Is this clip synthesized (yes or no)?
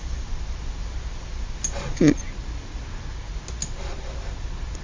no